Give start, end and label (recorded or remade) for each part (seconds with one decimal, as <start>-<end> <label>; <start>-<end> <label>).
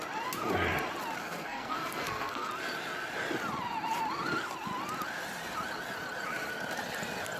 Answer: 0.0-1.2 recorded; 1.2-2.5 remade; 2.5-7.4 recorded